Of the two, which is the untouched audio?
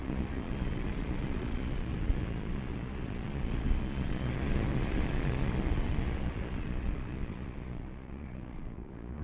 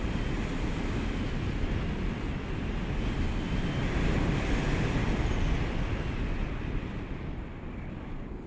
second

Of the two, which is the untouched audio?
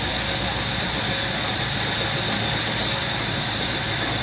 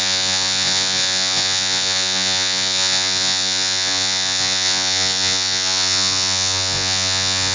first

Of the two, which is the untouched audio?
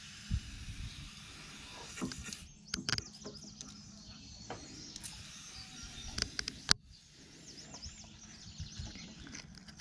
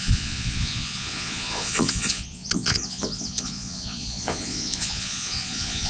first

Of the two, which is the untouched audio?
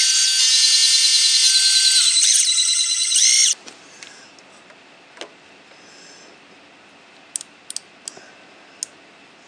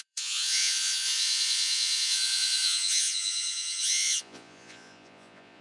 first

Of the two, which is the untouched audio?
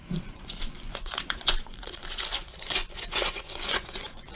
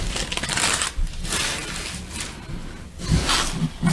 second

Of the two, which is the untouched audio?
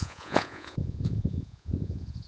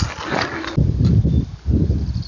second